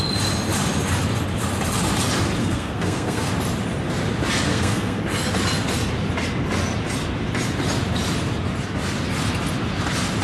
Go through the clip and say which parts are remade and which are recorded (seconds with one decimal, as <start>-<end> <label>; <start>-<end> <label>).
0.0-2.4 recorded; 2.4-3.3 remade; 3.3-4.5 recorded; 4.5-5.0 remade; 5.0-10.2 recorded